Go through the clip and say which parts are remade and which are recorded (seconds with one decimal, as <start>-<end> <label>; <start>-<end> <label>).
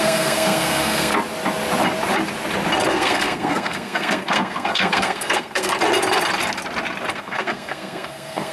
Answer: 0.0-1.1 remade; 1.1-2.9 recorded; 2.9-5.7 remade; 5.7-7.1 recorded; 7.1-8.5 remade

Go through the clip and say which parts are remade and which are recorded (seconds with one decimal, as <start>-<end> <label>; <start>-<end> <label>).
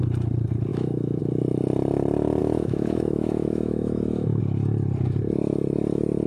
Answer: 0.0-0.7 recorded; 0.7-1.2 remade; 1.2-2.4 recorded; 2.4-4.4 remade; 4.4-6.3 recorded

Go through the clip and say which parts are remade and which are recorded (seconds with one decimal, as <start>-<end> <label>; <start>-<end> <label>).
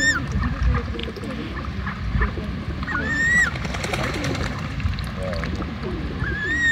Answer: 0.0-6.7 recorded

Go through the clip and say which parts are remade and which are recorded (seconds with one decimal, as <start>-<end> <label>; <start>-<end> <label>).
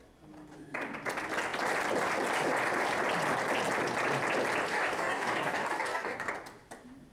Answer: 0.0-4.7 recorded; 4.7-6.3 remade; 6.3-7.1 recorded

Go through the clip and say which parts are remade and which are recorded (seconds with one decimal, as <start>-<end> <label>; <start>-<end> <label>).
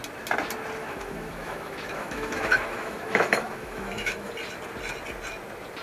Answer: 0.0-0.8 recorded; 0.8-4.3 remade; 4.3-5.8 recorded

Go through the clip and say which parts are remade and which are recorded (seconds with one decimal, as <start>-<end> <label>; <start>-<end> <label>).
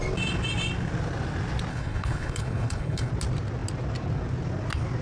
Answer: 0.0-1.7 recorded; 1.7-3.1 remade; 3.1-5.0 recorded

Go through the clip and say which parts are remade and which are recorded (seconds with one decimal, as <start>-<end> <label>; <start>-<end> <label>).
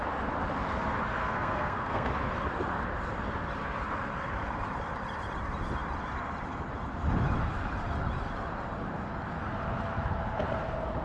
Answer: 0.0-1.2 recorded; 1.2-2.1 remade; 2.1-11.0 recorded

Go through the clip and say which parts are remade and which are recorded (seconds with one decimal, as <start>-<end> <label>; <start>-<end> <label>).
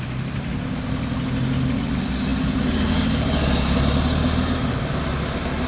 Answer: 0.0-5.7 recorded